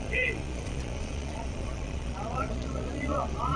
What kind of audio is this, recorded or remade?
remade